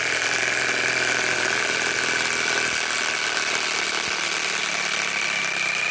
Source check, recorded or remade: remade